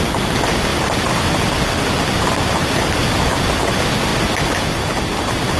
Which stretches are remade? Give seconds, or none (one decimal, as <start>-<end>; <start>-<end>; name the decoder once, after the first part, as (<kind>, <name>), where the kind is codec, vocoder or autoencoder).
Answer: none